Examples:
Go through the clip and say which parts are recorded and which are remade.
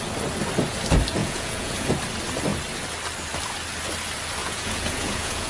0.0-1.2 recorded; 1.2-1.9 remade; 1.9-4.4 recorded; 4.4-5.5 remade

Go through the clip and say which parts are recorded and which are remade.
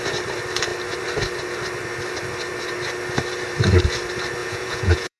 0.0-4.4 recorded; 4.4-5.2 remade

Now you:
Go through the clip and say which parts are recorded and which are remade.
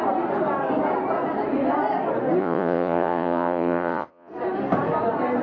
0.0-2.4 recorded; 2.4-4.3 remade; 4.3-5.4 recorded